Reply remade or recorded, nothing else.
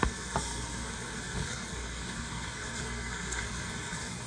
remade